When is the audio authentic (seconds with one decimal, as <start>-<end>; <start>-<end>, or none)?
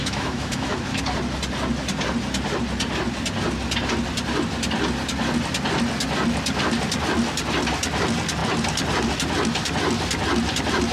1.0-10.9